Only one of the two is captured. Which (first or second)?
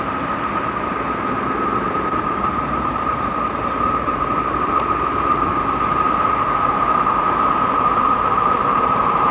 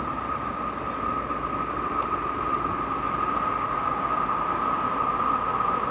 second